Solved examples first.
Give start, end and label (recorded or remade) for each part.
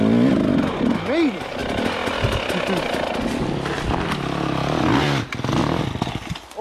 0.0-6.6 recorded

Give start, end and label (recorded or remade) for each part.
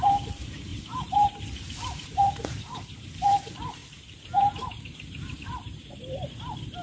0.0-6.8 remade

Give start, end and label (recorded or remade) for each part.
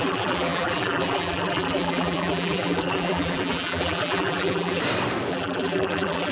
0.0-4.8 remade; 4.8-5.3 recorded; 5.3-6.3 remade